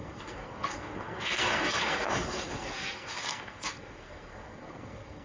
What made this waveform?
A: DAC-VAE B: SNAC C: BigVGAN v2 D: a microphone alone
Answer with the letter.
B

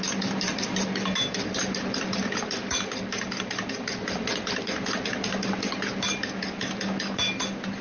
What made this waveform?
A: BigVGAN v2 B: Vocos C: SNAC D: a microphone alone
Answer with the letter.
D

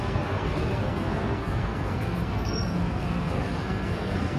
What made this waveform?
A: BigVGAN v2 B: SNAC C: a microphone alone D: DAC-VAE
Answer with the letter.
B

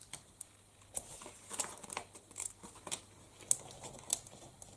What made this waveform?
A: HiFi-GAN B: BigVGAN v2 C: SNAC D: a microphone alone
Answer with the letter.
D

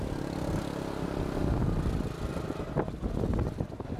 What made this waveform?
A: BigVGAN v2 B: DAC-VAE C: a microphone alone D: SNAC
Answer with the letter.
C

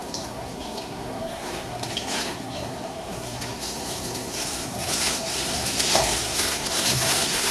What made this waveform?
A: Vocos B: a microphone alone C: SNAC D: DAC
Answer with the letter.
C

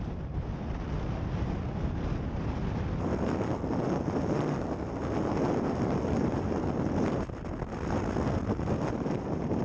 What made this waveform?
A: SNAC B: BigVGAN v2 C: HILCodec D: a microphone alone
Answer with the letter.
D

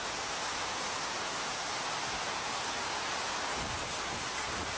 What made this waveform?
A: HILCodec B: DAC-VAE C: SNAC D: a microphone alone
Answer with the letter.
D